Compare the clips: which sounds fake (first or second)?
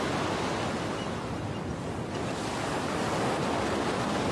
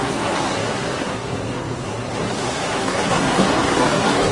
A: second